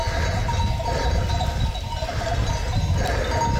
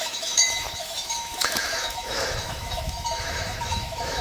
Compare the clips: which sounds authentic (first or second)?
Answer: first